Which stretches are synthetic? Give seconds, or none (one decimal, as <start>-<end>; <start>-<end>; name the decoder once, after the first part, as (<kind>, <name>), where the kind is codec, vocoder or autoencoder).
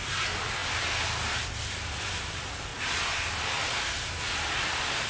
0.0-2.7 (vocoder, BigVGAN v2); 4.5-5.1